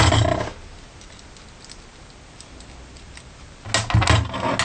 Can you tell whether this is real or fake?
real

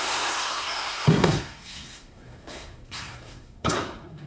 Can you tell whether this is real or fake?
fake